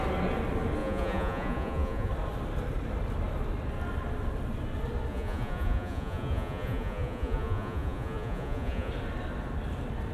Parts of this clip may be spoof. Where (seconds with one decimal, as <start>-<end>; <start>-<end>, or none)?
0.8-2.1; 5.1-8.9